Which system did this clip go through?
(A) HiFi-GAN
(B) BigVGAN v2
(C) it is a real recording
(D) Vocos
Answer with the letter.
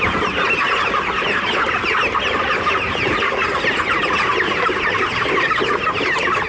C